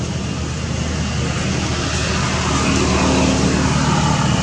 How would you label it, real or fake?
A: real